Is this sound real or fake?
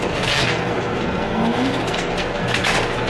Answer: fake